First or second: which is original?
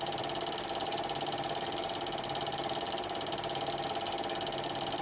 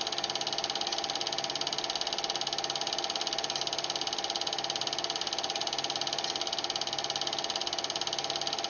second